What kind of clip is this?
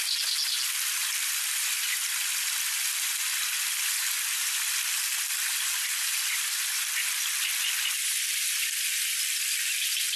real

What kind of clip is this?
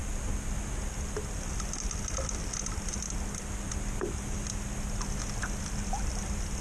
real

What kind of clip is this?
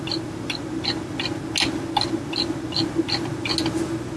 real